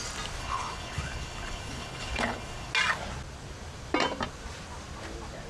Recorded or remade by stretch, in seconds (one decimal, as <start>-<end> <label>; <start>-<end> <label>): 0.0-0.4 recorded; 0.4-2.7 remade; 2.7-5.5 recorded